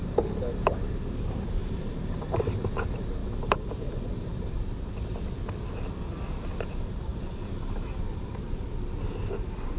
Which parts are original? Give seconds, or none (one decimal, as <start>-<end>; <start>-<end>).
0.0-1.6; 2.7-3.2; 4.6-7.1; 8.4-9.8